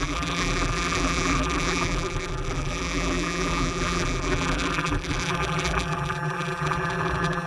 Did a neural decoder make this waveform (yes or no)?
yes